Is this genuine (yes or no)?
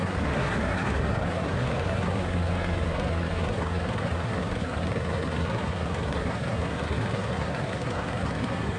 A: no